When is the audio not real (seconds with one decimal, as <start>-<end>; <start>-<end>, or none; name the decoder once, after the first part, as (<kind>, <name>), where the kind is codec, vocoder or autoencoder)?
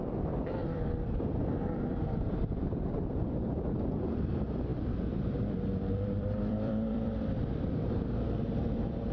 0.0-1.4 (vocoder, BigVGAN v2); 3.1-9.1